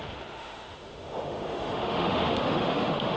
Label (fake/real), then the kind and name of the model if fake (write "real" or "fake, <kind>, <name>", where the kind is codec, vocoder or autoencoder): fake, autoencoder, DAC-VAE